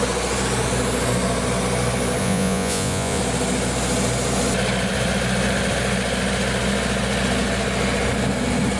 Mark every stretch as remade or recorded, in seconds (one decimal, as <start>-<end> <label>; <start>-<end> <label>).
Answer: 0.0-2.2 recorded; 2.2-3.2 remade; 3.2-8.8 recorded